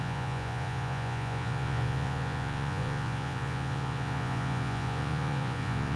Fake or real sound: fake